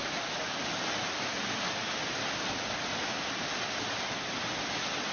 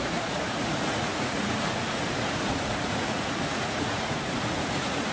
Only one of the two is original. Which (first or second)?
first